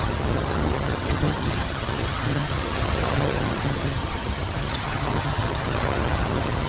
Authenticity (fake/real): fake